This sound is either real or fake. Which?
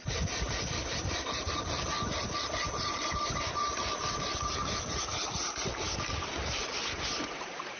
fake